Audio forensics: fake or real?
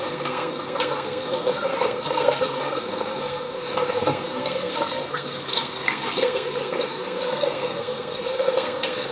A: fake